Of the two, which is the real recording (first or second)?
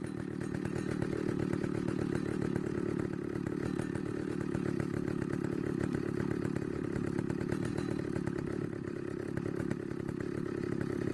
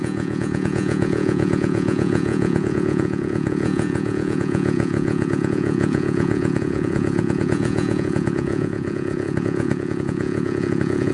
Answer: first